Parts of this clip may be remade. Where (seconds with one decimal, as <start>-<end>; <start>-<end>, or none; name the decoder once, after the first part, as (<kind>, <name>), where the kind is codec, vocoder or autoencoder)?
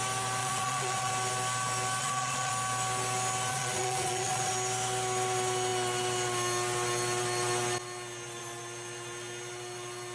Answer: 0.4-1.1 (vocoder, Vocos); 2.0-2.5; 3.5-4.5